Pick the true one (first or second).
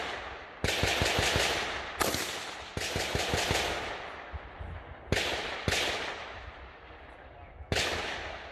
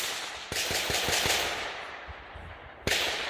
first